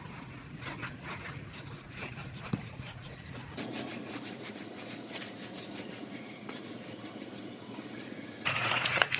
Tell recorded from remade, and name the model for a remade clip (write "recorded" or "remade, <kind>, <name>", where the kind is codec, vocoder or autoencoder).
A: remade, vocoder, Vocos